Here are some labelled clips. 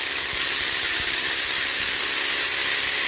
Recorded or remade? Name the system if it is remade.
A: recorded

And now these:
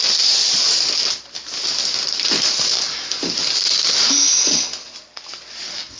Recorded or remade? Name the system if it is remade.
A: recorded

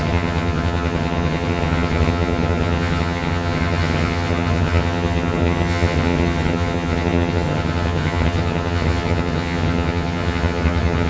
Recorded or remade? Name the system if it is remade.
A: remade, vocoder, HiFi-GAN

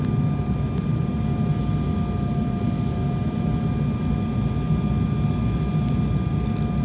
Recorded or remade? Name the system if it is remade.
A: recorded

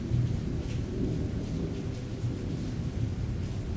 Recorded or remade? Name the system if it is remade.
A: recorded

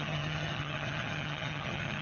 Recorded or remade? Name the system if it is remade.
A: remade, vocoder, HiFi-GAN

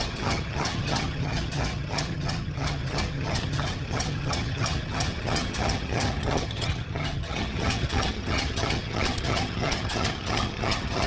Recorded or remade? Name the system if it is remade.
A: remade, vocoder, HiFi-GAN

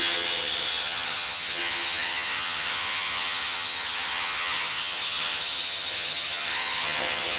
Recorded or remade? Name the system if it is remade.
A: remade, vocoder, HiFi-GAN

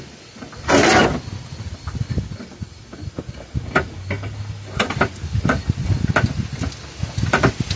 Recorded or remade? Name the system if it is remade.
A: recorded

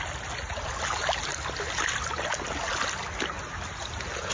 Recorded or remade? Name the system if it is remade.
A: recorded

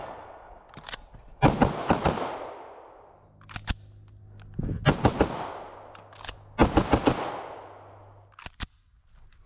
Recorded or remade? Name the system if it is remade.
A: recorded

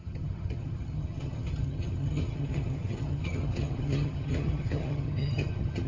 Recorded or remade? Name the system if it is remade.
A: remade, vocoder, HiFi-GAN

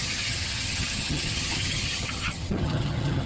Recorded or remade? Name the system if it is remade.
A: remade, vocoder, HiFi-GAN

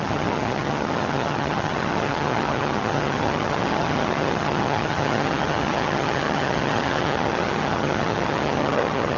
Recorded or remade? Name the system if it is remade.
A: remade, vocoder, HiFi-GAN